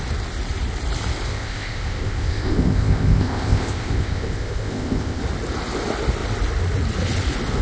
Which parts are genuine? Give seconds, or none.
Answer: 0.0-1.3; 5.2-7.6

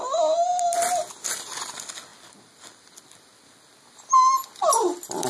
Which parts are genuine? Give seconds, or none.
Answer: 0.0-5.3

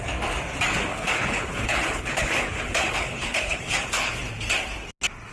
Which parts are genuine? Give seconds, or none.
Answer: 0.0-0.9; 4.1-5.3

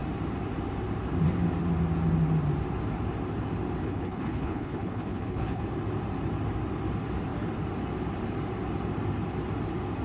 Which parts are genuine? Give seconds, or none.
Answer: 0.0-3.8; 5.6-10.0